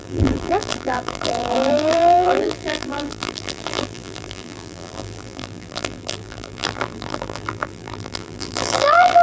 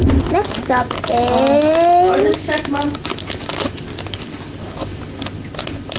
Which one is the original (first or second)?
second